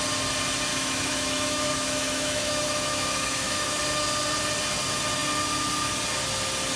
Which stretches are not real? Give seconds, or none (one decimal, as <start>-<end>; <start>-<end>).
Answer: 0.7-3.8